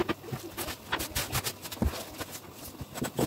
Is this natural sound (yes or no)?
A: yes